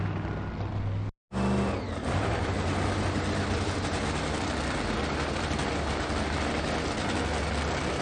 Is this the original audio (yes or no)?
yes